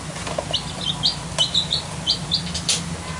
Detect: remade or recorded recorded